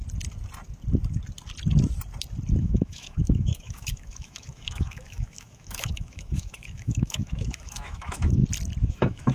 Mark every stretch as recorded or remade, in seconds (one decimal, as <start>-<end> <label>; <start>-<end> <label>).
0.0-2.6 recorded; 2.6-8.4 remade; 8.4-8.9 recorded; 8.9-9.3 remade